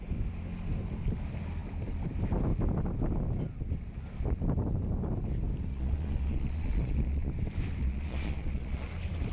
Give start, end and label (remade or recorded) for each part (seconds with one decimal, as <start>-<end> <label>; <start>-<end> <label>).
0.0-5.7 recorded; 5.7-7.3 remade; 7.3-7.8 recorded; 7.8-8.9 remade; 8.9-9.3 recorded